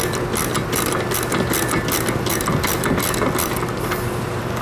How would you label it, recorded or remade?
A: recorded